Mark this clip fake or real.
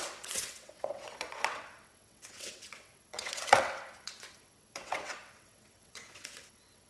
fake